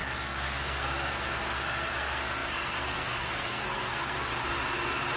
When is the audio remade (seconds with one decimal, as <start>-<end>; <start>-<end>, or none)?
0.0-4.3